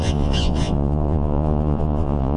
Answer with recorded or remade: remade